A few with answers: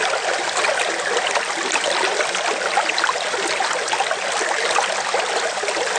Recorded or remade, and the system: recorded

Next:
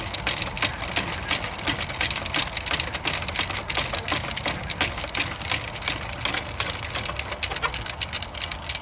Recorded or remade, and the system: recorded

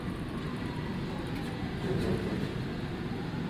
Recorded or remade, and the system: recorded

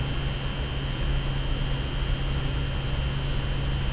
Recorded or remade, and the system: recorded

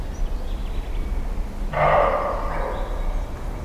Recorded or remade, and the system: recorded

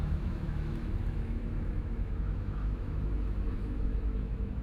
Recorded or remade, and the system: remade, autoencoder, DAC-VAE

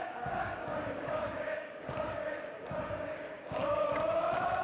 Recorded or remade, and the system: remade, codec, DAC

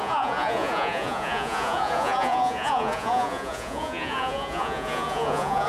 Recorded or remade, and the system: remade, vocoder, Vocos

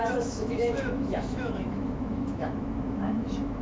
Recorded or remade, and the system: remade, autoencoder, DAC-VAE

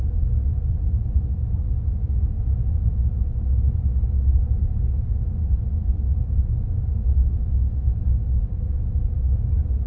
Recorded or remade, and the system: recorded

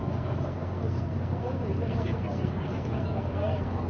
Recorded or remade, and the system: remade, codec, SNAC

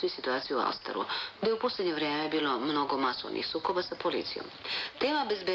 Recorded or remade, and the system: recorded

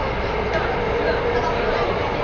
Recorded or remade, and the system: recorded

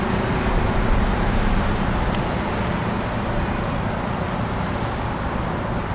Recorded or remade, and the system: recorded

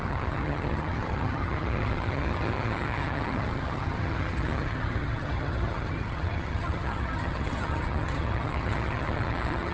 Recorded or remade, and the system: remade, vocoder, HiFi-GAN